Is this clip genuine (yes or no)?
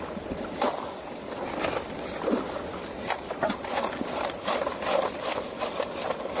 yes